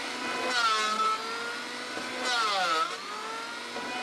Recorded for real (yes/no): yes